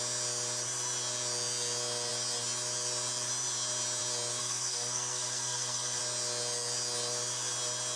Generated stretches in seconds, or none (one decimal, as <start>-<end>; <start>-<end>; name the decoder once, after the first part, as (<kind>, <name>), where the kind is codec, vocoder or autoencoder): 4.4-6.0 (codec, SNAC)